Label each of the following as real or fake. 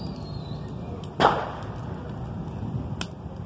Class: real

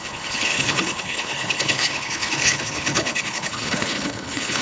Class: fake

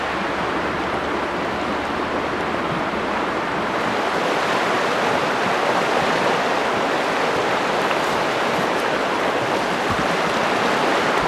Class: real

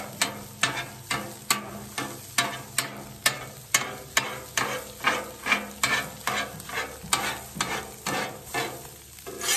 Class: real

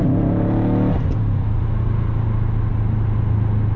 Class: real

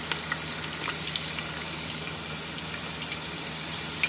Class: real